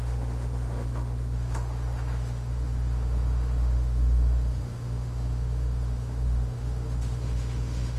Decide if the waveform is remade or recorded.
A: remade